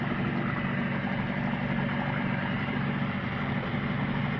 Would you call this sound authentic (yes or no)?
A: yes